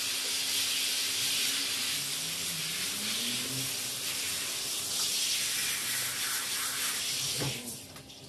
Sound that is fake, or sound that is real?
real